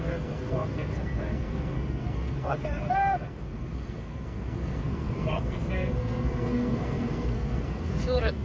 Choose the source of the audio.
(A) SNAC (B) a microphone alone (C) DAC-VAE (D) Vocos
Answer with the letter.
A